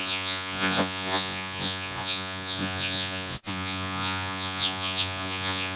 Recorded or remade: remade